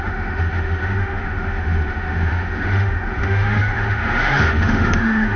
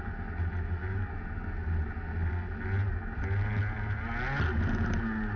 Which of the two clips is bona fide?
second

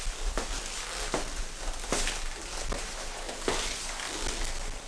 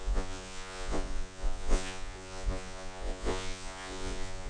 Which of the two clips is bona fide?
first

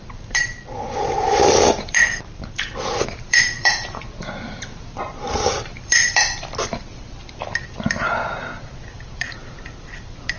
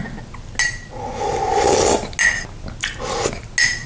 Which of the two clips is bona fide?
second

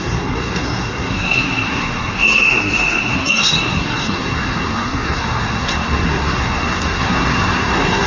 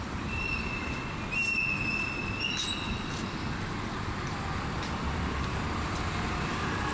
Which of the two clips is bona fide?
second